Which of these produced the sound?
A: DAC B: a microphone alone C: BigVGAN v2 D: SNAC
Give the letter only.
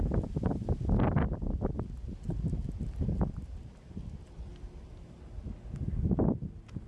B